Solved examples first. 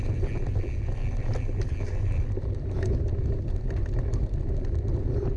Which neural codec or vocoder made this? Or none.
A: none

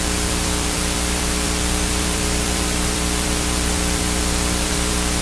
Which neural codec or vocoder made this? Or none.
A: vocoder, BigVGAN v2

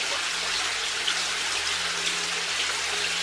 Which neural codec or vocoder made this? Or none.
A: none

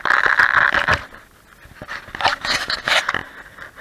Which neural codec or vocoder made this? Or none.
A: none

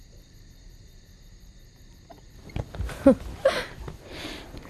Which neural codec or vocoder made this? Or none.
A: none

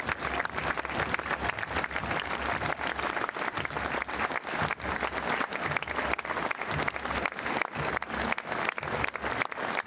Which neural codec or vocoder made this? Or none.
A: none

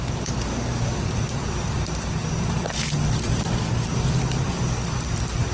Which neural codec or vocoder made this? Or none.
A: vocoder, BigVGAN v2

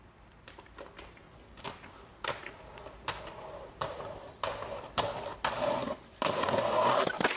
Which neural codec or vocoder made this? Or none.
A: none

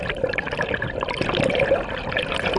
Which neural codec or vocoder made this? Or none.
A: vocoder, BigVGAN v2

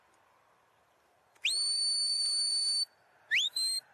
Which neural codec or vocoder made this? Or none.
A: vocoder, BigVGAN v2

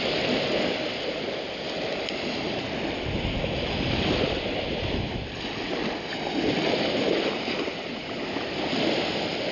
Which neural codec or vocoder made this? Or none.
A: none